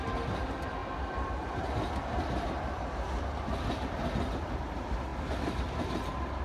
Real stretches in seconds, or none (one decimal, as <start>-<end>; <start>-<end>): 0.0-6.4